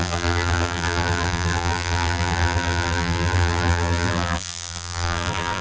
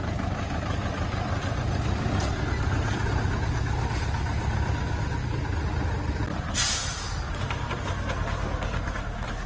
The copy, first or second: first